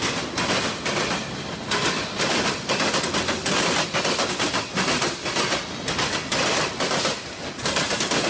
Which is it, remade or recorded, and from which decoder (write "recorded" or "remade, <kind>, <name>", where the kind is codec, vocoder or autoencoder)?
recorded